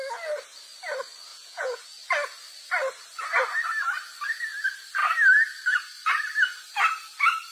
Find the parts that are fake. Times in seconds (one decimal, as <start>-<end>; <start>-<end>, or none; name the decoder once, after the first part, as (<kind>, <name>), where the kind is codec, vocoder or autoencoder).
1.3-1.8 (vocoder, Vocos)

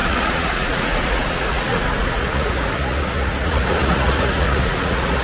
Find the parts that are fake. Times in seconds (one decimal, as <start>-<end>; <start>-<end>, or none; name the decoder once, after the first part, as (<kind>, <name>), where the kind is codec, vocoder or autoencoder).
0.0-5.2 (vocoder, Vocos)